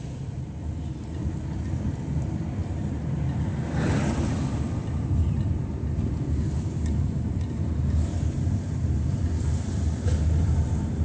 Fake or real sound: real